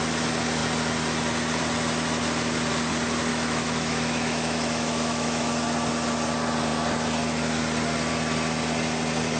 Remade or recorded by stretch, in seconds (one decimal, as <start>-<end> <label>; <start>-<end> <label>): 0.0-3.3 recorded; 3.3-5.5 remade; 5.5-9.4 recorded